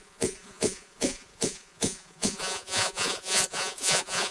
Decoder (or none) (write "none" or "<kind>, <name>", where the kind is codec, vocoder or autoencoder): vocoder, Vocos